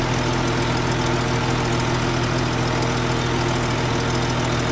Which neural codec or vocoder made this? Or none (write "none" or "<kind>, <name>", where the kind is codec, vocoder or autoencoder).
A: none